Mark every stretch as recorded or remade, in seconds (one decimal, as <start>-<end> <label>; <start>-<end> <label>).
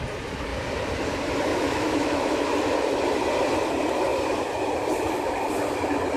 0.0-1.5 recorded; 1.5-2.7 remade; 2.7-6.2 recorded